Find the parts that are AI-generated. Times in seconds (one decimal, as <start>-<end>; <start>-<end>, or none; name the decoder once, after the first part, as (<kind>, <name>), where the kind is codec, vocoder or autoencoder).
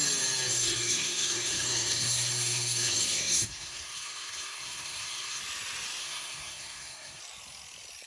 0.5-5.4 (codec, SNAC); 6.0-7.2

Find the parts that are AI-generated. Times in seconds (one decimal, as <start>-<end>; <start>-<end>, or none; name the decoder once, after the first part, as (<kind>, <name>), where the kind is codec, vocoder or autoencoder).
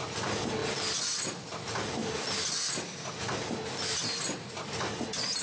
none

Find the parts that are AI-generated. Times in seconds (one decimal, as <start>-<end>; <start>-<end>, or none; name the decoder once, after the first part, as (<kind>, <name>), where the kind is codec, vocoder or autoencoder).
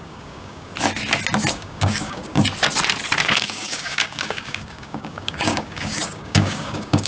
0.0-0.7 (codec, DAC); 1.5-2.4; 3.2-7.1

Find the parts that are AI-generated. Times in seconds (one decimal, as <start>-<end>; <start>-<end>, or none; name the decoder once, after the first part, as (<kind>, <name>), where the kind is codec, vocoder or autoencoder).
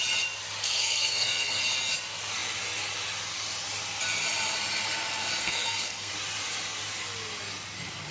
0.6-1.6 (codec, SNAC); 5.4-6.1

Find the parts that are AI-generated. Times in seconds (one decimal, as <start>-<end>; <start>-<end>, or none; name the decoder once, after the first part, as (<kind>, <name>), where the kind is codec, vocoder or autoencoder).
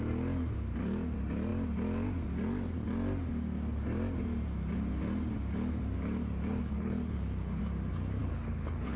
6.5-7.6 (codec, HILCodec); 8.2-9.0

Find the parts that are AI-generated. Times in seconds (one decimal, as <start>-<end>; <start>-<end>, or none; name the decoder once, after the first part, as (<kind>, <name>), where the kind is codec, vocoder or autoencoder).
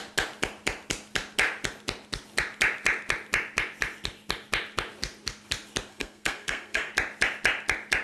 5.9-6.9 (codec, SNAC)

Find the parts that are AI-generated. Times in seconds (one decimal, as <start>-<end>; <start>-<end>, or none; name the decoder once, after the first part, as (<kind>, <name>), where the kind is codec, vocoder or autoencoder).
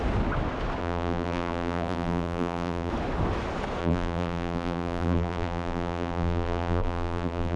0.8-2.9 (vocoder, BigVGAN v2); 3.8-7.6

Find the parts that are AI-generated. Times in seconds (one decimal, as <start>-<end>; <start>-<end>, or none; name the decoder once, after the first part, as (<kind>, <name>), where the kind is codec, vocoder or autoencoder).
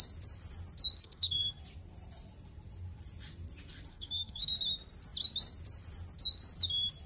1.0-1.6 (codec, SNAC); 3.9-4.5